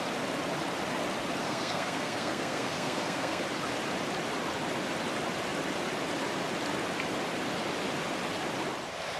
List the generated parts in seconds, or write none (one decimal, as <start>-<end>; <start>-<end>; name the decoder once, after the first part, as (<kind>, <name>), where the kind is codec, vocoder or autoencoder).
1.4-3.4 (codec, SNAC)